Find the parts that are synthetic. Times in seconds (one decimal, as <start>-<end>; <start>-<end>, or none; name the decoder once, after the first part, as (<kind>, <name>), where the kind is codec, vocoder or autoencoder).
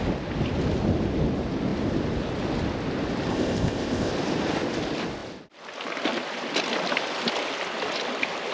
3.3-4.1 (codec, ZipCodec)